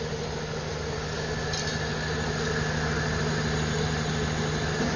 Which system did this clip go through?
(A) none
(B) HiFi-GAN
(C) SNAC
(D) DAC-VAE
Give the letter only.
A